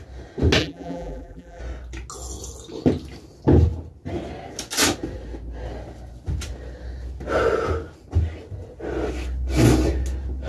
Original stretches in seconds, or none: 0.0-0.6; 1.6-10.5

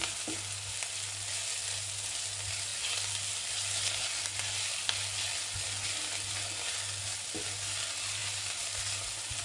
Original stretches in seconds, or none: 0.0-9.4

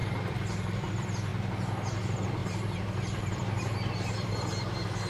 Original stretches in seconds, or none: 0.9-2.4